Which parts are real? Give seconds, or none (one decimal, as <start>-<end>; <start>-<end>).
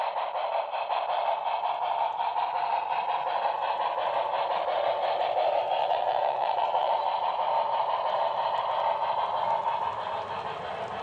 0.0-5.8; 6.9-11.0